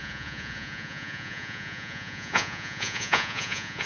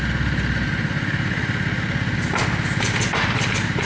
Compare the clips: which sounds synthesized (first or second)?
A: first